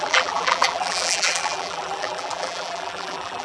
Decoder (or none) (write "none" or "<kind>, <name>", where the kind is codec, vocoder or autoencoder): vocoder, BigVGAN v2